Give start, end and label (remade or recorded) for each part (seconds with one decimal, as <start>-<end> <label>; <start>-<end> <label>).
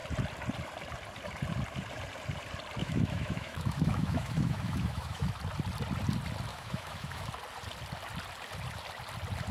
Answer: 0.0-2.8 recorded; 2.8-5.3 remade; 5.3-6.5 recorded; 6.5-7.3 remade; 7.3-9.5 recorded